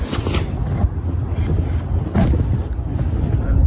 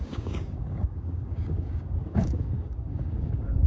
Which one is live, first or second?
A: first